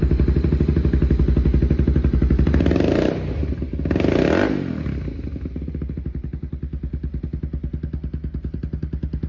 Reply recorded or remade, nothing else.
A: recorded